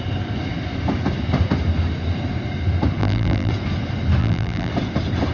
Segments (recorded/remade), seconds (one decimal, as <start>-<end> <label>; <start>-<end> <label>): 0.0-3.0 recorded; 3.0-3.5 remade; 3.5-4.2 recorded; 4.2-4.7 remade; 4.7-5.3 recorded